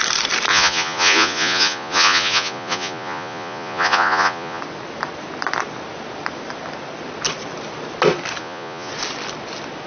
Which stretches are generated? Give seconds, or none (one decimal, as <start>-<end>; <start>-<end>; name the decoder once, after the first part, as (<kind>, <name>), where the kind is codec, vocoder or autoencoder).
0.5-4.6 (vocoder, Vocos); 8.4-8.9